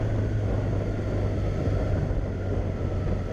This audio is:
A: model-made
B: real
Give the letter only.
B